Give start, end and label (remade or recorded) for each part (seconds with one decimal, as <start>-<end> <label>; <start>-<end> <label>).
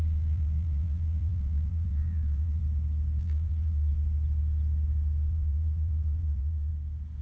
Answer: 0.0-2.6 remade; 2.6-3.2 recorded; 3.2-3.9 remade; 3.9-5.3 recorded; 5.3-6.7 remade; 6.7-7.2 recorded